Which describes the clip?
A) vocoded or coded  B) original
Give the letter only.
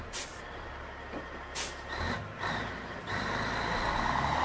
B